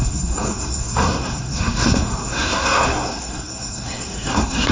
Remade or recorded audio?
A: remade